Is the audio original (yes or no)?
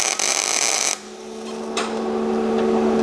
yes